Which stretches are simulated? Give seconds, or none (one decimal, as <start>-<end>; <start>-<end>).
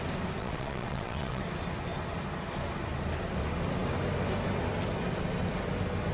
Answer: 0.4-1.4